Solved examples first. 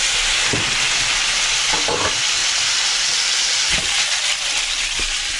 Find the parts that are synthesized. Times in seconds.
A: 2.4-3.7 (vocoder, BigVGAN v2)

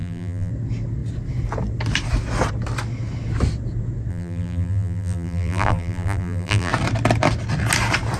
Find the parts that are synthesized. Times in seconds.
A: 0.0-0.5 (vocoder, BigVGAN v2); 4.1-6.7

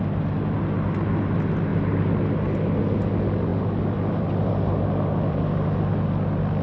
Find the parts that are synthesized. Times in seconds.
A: 3.5-4.7 (vocoder, BigVGAN v2)

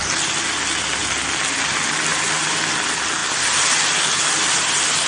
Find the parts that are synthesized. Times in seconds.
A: 2.1-2.7 (vocoder, BigVGAN v2)

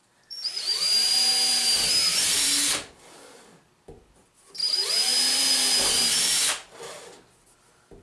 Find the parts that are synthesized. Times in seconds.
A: 0.0-1.3 (vocoder, BigVGAN v2); 4.2-5.5

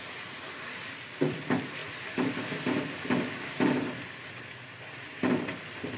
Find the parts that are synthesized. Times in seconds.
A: 0.0-1.8 (vocoder, BigVGAN v2); 5.4-6.0

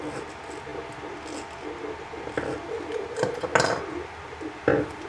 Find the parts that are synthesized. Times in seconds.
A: none